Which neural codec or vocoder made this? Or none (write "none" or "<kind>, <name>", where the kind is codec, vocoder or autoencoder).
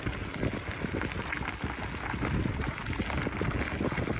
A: none